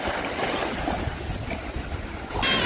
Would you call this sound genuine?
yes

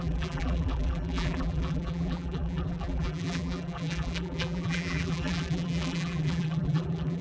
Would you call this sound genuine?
no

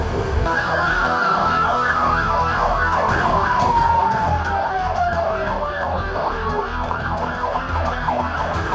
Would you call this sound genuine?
no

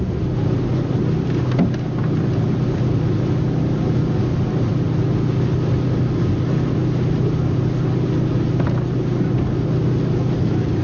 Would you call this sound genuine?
yes